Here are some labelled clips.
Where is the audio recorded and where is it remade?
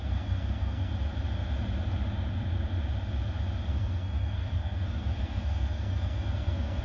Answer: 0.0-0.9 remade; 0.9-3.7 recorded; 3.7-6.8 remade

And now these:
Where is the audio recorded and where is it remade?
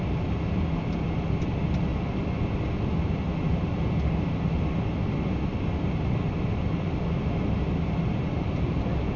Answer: 0.0-9.2 recorded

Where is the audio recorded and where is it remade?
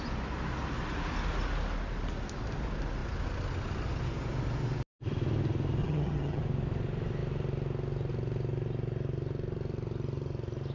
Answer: 0.0-5.8 recorded; 5.8-6.4 remade; 6.4-10.7 recorded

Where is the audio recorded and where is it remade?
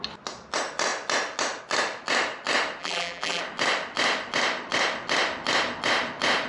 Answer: 0.0-2.8 recorded; 2.8-3.4 remade; 3.4-6.5 recorded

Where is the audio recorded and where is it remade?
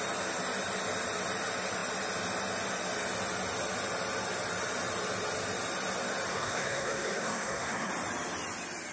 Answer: 0.0-6.3 recorded; 6.3-7.9 remade; 7.9-8.9 recorded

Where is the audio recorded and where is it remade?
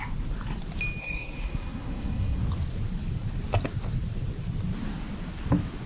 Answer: 0.0-1.0 recorded; 1.0-2.4 remade; 2.4-5.9 recorded